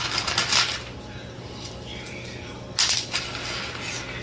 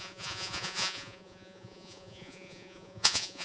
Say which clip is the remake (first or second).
second